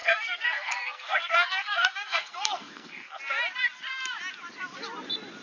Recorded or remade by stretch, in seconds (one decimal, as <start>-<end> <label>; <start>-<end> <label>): 0.0-3.2 remade; 3.2-5.4 recorded